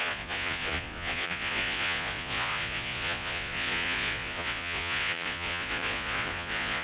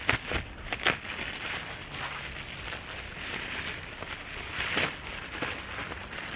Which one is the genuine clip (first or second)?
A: second